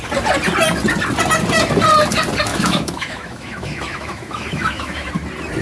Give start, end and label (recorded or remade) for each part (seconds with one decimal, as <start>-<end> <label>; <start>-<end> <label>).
0.0-2.5 recorded; 2.5-5.1 remade; 5.1-5.6 recorded